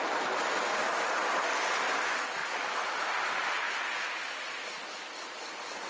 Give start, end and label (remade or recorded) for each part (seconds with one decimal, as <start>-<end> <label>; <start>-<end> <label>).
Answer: 0.0-1.2 recorded; 1.2-1.8 remade; 1.8-2.4 recorded; 2.4-3.3 remade; 3.3-5.9 recorded